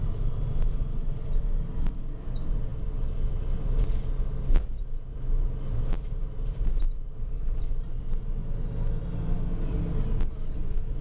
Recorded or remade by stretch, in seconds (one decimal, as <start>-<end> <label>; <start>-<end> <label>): 0.0-8.4 remade; 8.4-11.0 recorded